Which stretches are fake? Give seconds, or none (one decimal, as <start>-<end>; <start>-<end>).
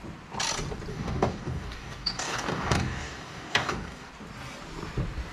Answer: 0.9-4.1